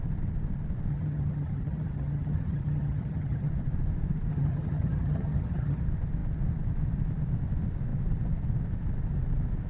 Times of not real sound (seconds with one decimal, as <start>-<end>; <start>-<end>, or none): 0.9-3.5; 4.3-5.8